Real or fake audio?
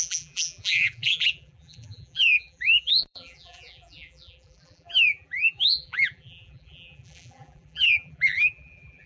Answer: fake